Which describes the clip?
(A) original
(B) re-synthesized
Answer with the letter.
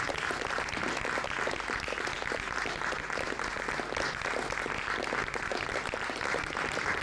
A